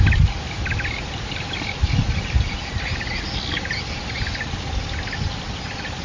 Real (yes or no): yes